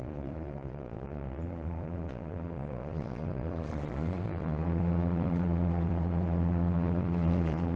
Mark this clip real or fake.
fake